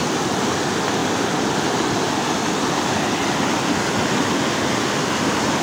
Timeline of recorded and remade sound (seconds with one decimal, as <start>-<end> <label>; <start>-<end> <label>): 0.0-5.6 recorded